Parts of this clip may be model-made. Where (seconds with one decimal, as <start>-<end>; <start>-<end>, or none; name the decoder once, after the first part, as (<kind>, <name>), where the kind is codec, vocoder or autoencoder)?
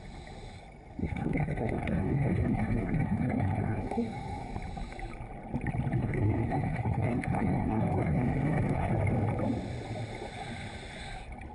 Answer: 1.0-4.5 (codec, SNAC); 6.0-8.9